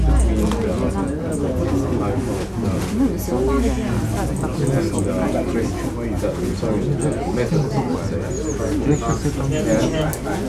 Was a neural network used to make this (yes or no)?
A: no